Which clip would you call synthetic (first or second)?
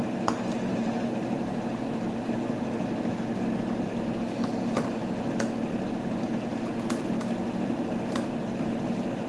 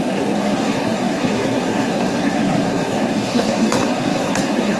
second